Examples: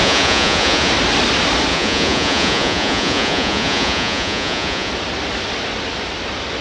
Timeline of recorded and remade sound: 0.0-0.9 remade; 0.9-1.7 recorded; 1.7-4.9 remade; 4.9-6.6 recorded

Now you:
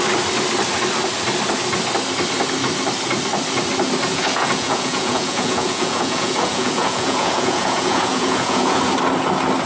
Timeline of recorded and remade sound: 0.0-4.1 recorded; 4.1-8.8 remade; 8.8-9.7 recorded

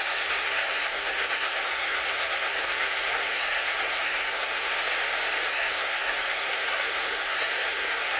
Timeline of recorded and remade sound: 0.0-4.7 remade; 4.7-5.5 recorded; 5.5-8.2 remade

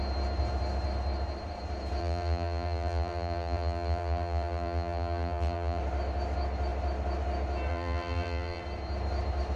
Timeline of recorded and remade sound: 0.0-2.0 recorded; 2.0-5.8 remade; 5.8-7.7 recorded; 7.7-8.6 remade; 8.6-9.6 recorded

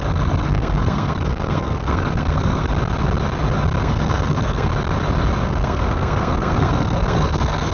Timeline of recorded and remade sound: 0.0-2.7 remade; 2.7-3.8 recorded; 3.8-4.7 remade; 4.7-5.4 recorded; 5.4-7.7 remade

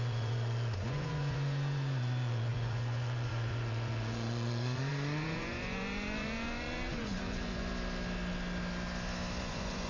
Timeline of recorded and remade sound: 0.0-7.7 remade; 7.7-9.4 recorded; 9.4-9.9 remade